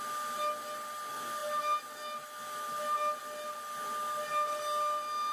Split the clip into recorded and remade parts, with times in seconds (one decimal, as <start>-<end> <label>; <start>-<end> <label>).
0.0-5.3 recorded